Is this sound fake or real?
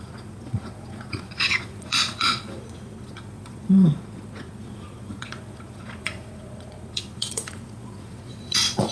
fake